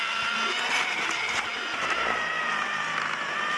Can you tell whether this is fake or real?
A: fake